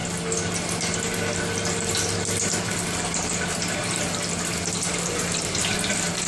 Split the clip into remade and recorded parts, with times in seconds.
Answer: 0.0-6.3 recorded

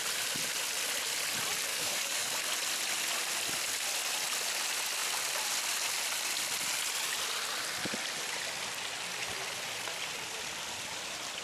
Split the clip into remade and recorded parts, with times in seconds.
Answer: 0.0-1.7 recorded; 1.7-2.4 remade; 2.4-11.4 recorded

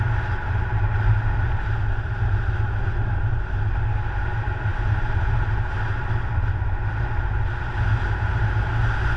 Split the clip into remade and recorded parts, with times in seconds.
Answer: 0.0-9.2 recorded

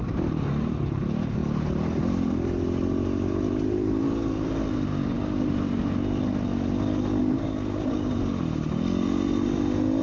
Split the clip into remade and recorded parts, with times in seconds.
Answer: 0.0-4.9 recorded; 4.9-5.5 remade; 5.5-7.2 recorded; 7.2-8.3 remade; 8.3-10.0 recorded

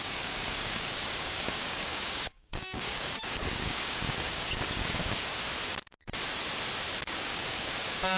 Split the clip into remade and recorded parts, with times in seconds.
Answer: 0.0-5.3 remade; 5.3-7.0 recorded; 7.0-8.2 remade

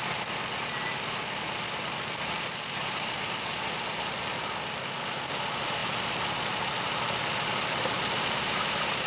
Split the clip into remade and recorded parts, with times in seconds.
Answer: 0.0-9.1 recorded

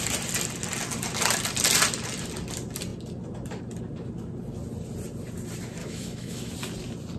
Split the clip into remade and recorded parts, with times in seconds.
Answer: 0.0-5.8 recorded; 5.8-6.5 remade; 6.5-7.2 recorded

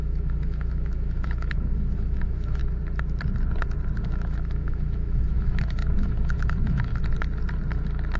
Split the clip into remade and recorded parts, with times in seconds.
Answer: 0.0-2.6 remade; 2.6-4.0 recorded; 4.0-6.9 remade; 6.9-8.2 recorded